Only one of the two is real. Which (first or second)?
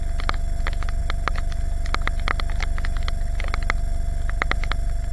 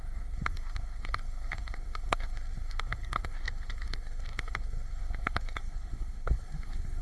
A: first